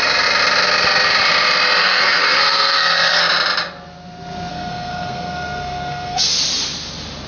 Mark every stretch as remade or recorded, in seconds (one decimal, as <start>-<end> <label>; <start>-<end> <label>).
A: 0.0-1.8 recorded; 1.8-3.2 remade; 3.2-4.5 recorded; 4.5-6.3 remade; 6.3-7.3 recorded